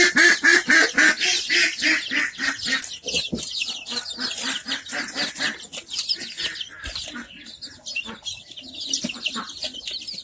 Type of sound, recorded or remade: recorded